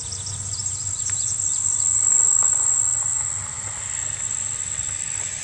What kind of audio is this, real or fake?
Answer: real